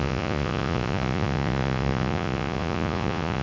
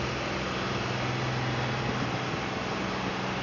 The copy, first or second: first